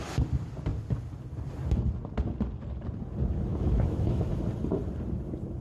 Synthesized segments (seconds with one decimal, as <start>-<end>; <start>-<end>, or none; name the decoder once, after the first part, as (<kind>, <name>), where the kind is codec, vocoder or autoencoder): 3.5-4.4 (autoencoder, DAC-VAE)